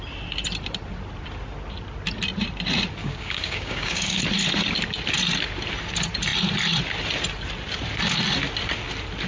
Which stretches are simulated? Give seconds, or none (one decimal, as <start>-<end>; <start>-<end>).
3.0-4.2